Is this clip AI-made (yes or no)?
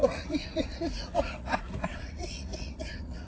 yes